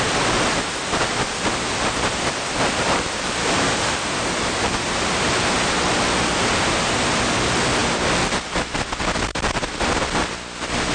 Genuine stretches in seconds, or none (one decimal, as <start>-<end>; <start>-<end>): 0.0-10.9